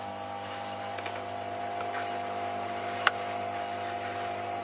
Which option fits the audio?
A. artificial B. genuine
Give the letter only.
B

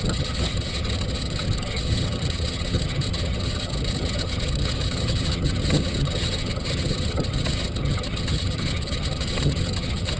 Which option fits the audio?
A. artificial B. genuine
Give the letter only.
A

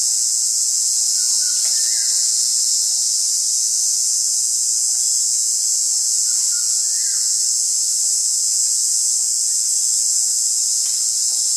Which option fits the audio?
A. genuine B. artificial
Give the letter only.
B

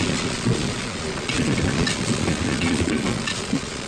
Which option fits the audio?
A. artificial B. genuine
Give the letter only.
A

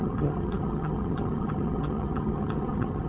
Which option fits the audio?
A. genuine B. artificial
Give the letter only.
B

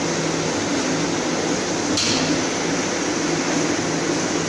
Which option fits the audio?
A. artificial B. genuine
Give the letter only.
B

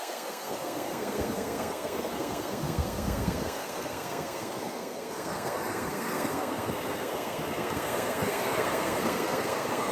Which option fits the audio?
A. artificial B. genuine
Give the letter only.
A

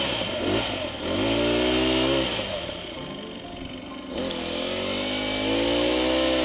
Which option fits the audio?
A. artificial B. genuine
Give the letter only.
B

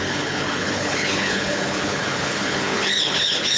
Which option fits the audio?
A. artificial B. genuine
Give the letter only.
A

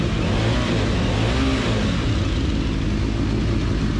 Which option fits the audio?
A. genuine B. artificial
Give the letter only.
A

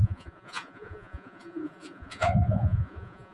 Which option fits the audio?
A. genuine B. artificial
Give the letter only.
B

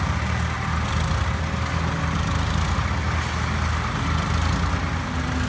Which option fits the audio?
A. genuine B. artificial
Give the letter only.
A